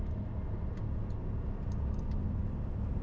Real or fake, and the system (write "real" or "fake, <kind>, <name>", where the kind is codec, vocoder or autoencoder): real